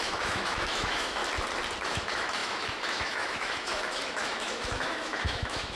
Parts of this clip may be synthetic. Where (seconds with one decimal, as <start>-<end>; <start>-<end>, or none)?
0.0-1.2; 1.8-5.8